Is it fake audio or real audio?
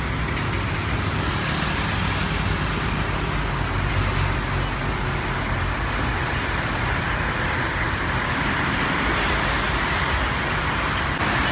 real